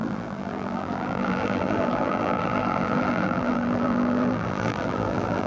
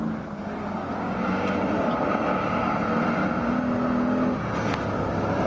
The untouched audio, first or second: second